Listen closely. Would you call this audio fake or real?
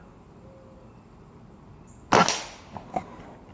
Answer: real